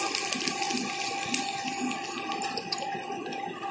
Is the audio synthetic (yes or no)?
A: no